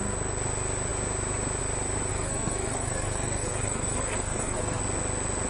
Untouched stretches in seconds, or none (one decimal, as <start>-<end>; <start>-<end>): 0.0-2.1; 4.8-5.5